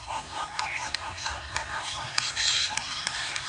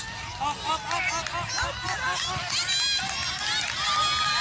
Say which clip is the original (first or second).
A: second